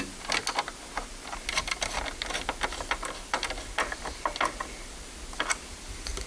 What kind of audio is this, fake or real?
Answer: real